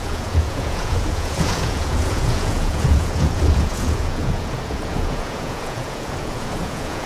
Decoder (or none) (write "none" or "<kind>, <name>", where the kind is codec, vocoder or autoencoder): vocoder, Vocos